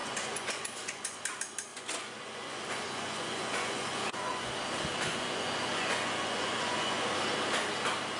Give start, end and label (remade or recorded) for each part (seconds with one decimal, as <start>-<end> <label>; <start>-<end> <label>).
0.0-1.2 remade; 1.2-1.7 recorded; 1.7-4.5 remade; 4.5-5.1 recorded; 5.1-7.1 remade; 7.1-8.2 recorded